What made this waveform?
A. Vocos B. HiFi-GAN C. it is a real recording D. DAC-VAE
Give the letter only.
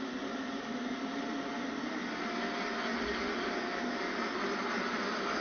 C